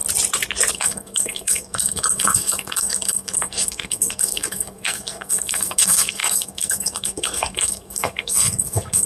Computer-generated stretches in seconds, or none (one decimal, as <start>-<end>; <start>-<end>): 0.7-9.1